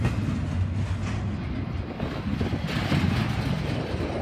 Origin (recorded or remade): recorded